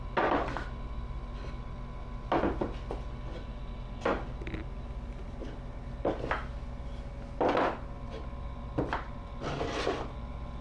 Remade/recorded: recorded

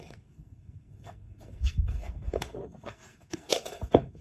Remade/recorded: remade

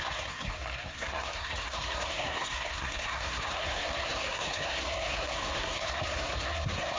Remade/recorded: remade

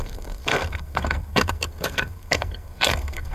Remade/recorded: remade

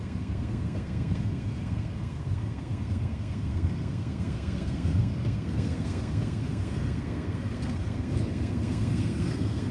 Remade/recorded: remade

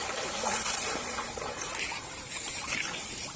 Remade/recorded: recorded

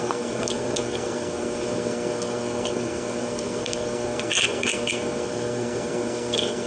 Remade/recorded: remade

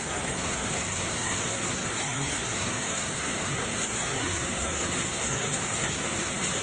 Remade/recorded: remade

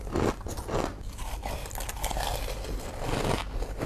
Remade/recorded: recorded